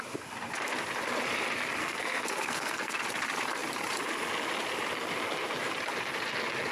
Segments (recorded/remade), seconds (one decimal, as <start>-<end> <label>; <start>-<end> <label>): 0.0-1.8 recorded; 1.8-3.0 remade; 3.0-6.7 recorded